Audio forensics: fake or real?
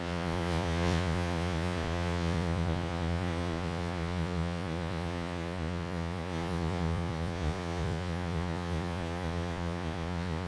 fake